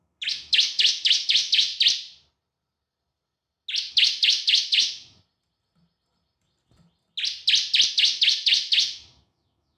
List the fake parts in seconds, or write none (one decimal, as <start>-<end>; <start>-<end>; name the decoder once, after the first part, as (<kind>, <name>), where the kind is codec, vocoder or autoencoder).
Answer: 0.0-1.7 (autoencoder, DAC-VAE); 3.9-5.2; 7.9-9.8